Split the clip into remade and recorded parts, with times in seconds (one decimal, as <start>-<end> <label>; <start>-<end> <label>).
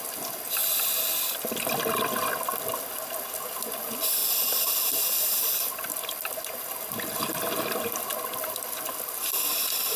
0.0-10.0 recorded